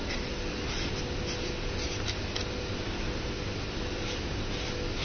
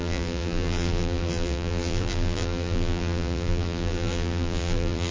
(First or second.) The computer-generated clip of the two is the second